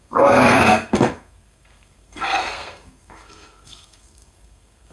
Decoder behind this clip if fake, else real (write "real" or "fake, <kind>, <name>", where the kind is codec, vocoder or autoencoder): fake, codec, SNAC